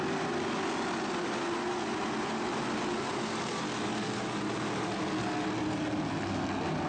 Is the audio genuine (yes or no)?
yes